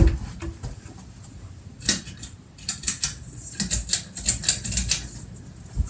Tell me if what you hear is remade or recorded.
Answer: recorded